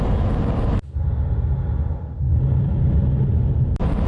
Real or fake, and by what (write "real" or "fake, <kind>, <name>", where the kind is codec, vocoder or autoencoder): real